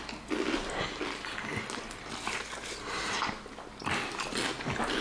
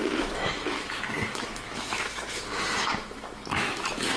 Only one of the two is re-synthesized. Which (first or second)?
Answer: second